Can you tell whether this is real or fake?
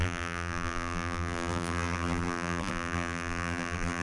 fake